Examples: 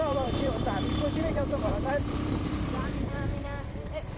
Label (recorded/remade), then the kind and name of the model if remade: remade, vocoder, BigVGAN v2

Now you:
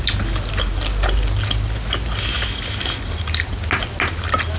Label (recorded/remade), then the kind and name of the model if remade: recorded